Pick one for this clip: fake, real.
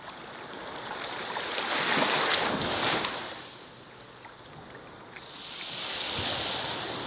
real